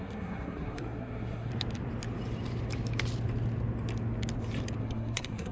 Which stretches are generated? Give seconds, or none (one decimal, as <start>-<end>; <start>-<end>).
0.0-1.5; 4.8-5.5